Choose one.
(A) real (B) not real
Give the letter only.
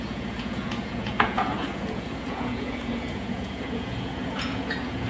B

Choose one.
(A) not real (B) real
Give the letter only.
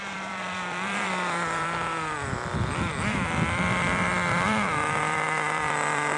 A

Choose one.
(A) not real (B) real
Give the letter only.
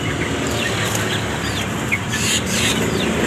B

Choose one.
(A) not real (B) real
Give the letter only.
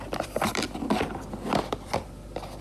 A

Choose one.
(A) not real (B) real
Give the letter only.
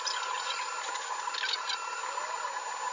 B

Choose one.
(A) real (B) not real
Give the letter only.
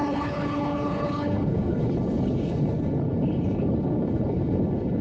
B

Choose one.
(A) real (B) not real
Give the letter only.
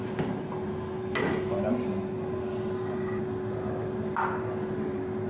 A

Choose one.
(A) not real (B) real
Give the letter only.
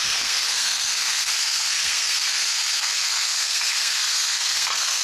A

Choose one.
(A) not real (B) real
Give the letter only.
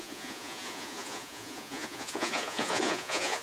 A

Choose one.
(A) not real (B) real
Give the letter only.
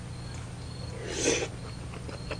B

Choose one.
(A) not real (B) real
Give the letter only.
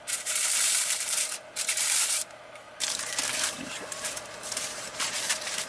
A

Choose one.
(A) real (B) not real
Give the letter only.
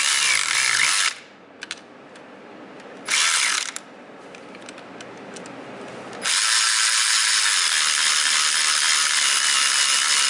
A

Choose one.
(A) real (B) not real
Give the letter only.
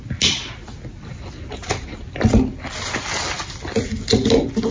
A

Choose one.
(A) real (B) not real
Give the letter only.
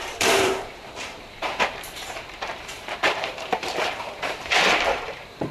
B